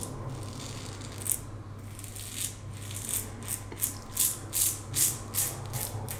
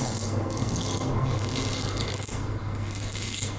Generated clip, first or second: second